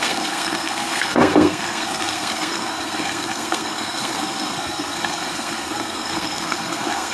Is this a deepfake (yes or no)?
yes